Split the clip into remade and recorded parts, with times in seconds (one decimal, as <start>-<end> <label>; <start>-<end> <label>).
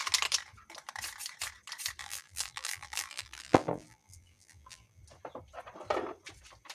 0.0-2.0 recorded; 2.0-5.0 remade; 5.0-6.7 recorded